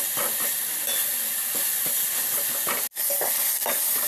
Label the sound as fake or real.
real